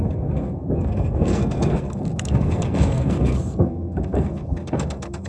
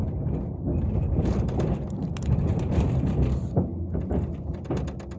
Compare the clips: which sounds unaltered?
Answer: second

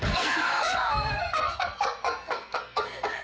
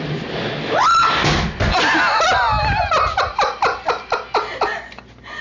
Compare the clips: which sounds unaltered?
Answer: second